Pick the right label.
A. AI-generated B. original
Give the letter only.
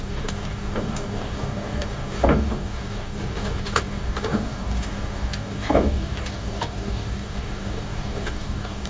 A